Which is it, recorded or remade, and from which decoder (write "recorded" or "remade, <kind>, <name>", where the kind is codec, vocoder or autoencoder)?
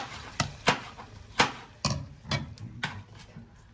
recorded